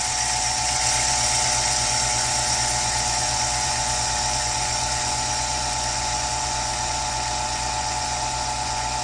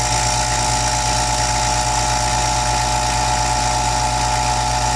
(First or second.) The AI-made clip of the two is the first